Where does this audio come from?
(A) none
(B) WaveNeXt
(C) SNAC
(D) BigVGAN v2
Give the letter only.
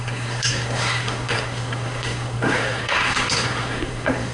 C